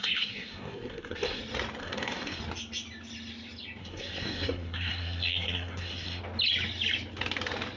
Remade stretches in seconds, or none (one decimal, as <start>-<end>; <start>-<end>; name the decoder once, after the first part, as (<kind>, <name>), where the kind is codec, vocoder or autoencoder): 0.0-1.4 (codec, SNAC); 1.8-2.4; 3.8-6.2